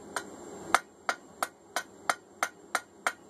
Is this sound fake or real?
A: real